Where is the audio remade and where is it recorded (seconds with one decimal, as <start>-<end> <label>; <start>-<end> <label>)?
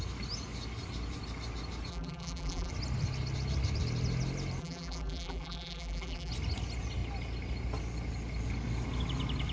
0.0-1.9 recorded; 1.9-2.7 remade; 2.7-4.6 recorded; 4.6-6.3 remade; 6.3-9.5 recorded